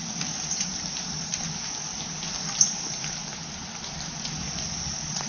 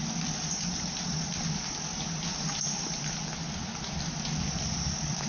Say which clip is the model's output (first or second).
first